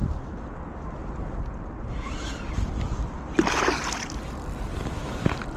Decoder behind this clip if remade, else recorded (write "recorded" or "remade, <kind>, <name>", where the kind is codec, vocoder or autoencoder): recorded